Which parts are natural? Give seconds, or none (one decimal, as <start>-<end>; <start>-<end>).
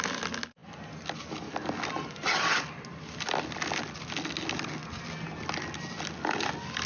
0.0-6.9